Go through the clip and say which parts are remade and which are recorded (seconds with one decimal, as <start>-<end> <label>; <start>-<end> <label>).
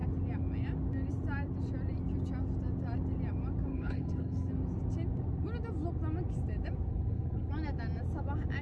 0.0-3.7 recorded; 3.7-4.5 remade; 4.5-6.9 recorded; 6.9-7.5 remade; 7.5-8.6 recorded